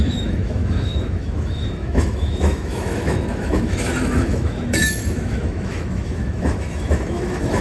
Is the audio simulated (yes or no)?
yes